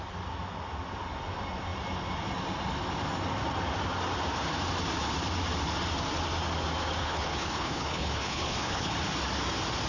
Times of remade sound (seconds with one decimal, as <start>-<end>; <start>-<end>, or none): 7.0-8.9